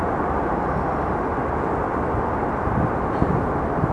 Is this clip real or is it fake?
real